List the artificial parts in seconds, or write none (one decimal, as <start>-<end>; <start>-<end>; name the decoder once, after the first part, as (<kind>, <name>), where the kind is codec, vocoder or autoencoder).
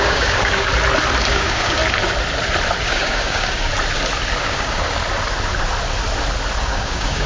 0.0-0.7 (codec, DAC); 1.3-1.8; 2.8-3.7; 4.4-5.0; 6.6-7.3